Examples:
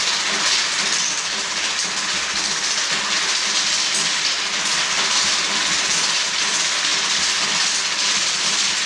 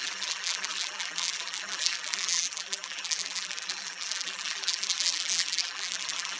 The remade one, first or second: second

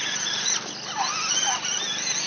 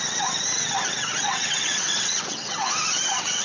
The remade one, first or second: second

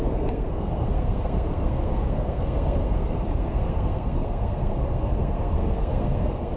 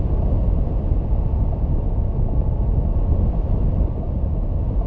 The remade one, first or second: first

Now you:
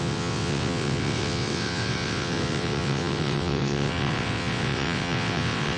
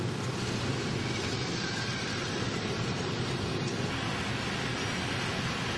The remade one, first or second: first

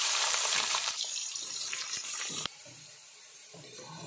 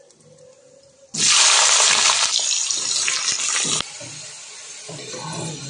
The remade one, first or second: first